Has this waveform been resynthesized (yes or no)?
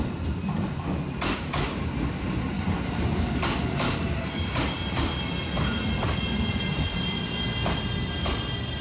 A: no